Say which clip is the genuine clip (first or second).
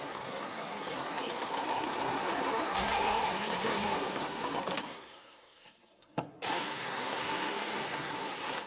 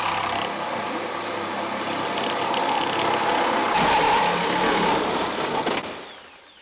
second